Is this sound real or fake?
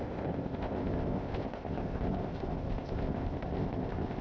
fake